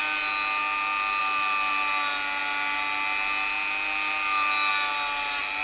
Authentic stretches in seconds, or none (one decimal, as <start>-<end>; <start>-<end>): 0.0-5.6